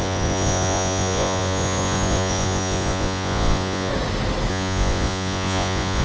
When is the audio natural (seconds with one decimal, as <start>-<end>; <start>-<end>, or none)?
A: 3.9-4.5